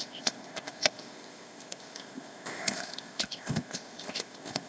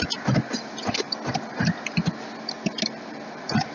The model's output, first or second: first